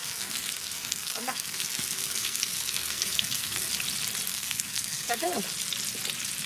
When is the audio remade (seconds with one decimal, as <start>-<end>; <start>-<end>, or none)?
0.0-3.7; 4.3-5.4